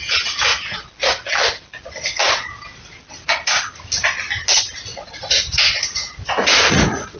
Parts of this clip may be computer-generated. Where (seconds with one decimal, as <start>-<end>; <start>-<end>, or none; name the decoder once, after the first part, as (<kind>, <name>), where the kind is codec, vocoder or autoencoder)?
4.9-7.2 (vocoder, Vocos)

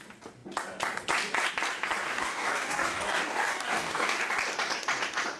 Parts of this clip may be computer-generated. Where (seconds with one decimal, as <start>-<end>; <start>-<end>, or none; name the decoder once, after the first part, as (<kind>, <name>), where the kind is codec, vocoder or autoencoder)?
2.0-4.2 (codec, DAC)

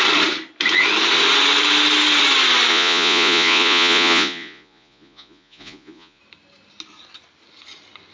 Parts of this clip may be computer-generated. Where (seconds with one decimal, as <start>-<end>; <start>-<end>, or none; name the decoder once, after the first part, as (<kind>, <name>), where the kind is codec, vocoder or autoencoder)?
2.7-6.2 (vocoder, Vocos)

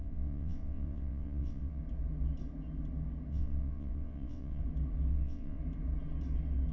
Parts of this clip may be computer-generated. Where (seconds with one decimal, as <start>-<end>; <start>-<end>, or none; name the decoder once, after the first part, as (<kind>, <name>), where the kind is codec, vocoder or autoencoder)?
0.0-1.8 (vocoder, WaveNeXt); 3.3-4.6; 5.1-5.6